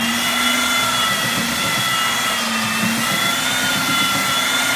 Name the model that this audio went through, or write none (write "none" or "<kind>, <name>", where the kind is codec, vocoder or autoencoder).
none